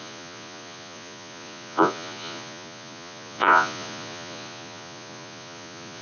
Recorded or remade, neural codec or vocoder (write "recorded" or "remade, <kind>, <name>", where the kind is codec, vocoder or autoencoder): remade, vocoder, Vocos